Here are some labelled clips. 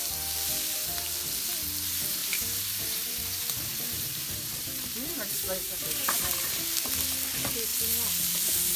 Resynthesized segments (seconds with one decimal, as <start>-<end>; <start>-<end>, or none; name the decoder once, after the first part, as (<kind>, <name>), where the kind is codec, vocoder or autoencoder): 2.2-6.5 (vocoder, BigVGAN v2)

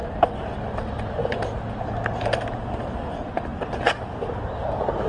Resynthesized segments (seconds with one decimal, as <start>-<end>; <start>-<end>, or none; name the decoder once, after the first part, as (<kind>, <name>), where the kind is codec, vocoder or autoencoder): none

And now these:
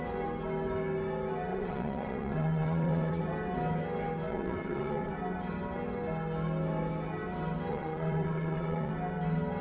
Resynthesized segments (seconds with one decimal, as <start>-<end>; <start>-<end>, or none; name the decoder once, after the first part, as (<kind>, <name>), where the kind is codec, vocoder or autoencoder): 1.5-3.2 (vocoder, WaveNeXt); 4.3-5.1; 7.7-8.9

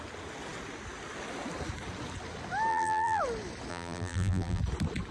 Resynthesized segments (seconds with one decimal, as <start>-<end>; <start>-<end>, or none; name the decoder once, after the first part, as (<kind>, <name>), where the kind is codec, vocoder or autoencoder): 2.7-3.2 (vocoder, BigVGAN v2); 3.7-4.6